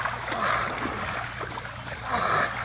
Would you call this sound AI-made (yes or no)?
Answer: no